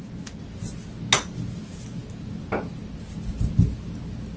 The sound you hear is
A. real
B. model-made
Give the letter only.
A